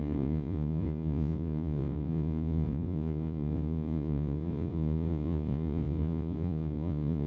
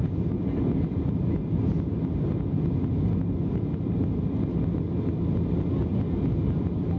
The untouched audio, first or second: second